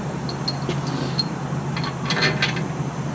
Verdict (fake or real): real